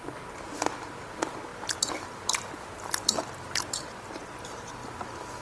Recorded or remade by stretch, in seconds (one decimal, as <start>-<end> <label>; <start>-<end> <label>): 0.0-5.4 recorded